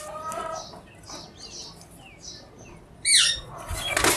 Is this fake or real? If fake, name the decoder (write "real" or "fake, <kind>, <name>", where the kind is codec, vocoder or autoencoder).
real